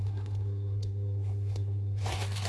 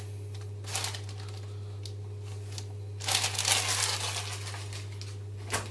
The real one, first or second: second